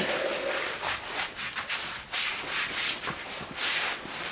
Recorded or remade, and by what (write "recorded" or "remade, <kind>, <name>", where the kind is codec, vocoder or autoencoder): recorded